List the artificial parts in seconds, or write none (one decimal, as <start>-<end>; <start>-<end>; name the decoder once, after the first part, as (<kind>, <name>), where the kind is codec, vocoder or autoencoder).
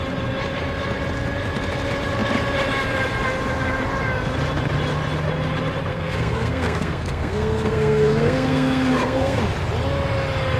5.9-9.4 (codec, SNAC)